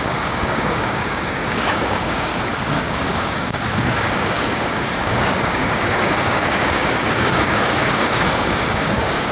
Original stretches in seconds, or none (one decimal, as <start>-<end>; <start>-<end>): 2.3-2.8